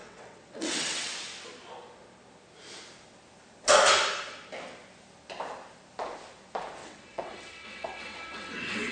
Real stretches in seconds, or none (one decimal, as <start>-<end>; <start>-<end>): 1.1-6.8